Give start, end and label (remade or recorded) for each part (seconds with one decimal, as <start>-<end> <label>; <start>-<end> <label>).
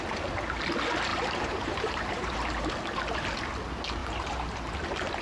0.0-1.1 recorded; 1.1-2.7 remade; 2.7-4.0 recorded; 4.0-4.6 remade; 4.6-5.2 recorded